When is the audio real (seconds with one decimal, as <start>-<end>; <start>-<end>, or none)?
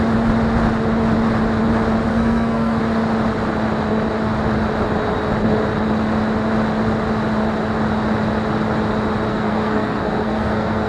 0.0-2.1; 2.8-9.3